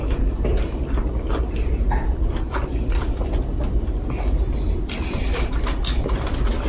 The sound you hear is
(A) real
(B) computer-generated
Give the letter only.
A